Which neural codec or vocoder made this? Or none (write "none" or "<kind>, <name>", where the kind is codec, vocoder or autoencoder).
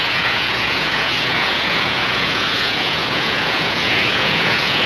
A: vocoder, Vocos